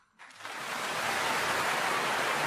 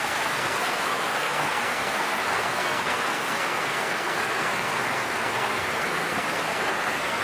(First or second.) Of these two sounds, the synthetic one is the second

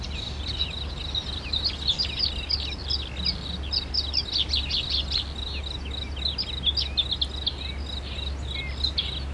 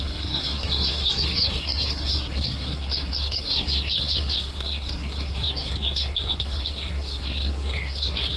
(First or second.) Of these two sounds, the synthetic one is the second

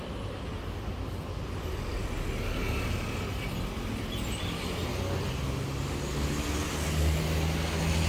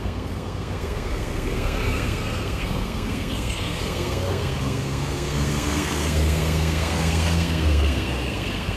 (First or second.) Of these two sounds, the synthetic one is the second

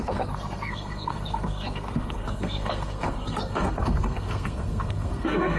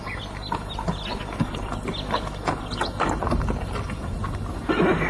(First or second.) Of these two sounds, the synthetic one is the first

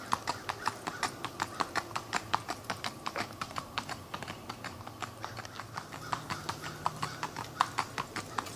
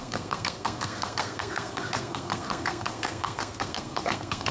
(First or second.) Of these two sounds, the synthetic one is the second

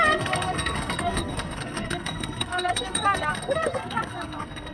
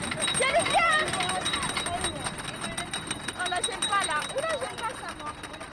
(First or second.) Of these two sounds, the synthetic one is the first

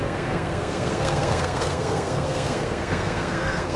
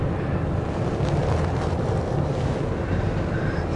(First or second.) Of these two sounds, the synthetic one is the first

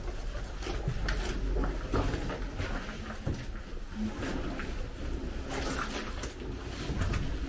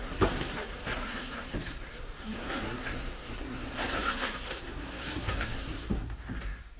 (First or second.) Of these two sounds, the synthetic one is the second